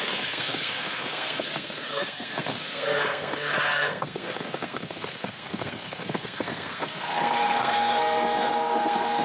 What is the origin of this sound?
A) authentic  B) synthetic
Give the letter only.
B